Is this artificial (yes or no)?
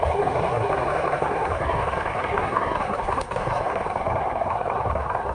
yes